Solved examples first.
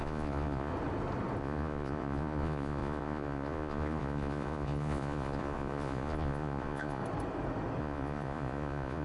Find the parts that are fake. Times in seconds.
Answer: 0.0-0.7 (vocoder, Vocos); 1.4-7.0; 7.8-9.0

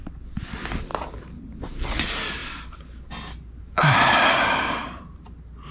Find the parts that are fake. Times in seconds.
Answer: none

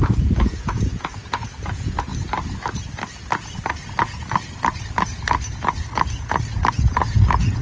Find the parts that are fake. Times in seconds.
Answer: 0.0-2.1 (vocoder, Vocos); 6.7-7.6

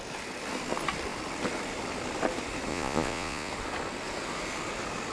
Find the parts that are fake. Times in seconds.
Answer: 2.7-3.5 (vocoder, Vocos)

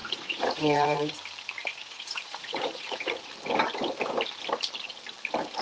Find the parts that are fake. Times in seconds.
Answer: 0.0-1.1 (vocoder, Vocos); 1.6-3.3

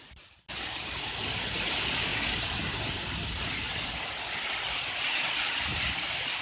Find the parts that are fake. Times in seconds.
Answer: none

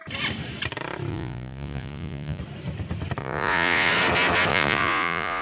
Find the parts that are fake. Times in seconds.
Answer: 1.1-2.4 (vocoder, Vocos); 3.2-3.9; 4.5-5.4

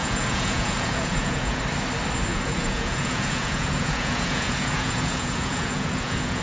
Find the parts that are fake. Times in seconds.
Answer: 0.0-1.6 (vocoder, Vocos); 2.3-6.4